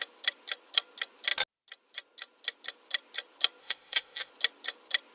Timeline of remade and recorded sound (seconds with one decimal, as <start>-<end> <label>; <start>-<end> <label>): 0.0-3.6 recorded; 3.6-4.3 remade; 4.3-5.1 recorded